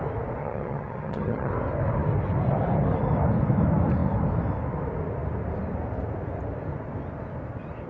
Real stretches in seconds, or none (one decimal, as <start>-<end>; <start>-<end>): 0.0-0.4; 1.5-7.9